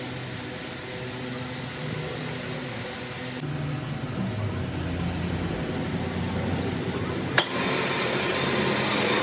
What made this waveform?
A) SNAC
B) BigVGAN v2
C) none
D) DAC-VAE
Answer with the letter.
C